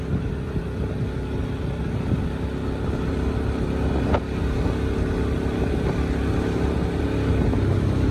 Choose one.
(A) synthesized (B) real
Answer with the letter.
B